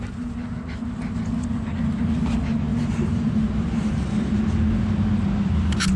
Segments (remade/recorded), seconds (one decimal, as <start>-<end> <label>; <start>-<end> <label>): 0.0-2.7 recorded; 2.7-3.3 remade; 3.3-6.0 recorded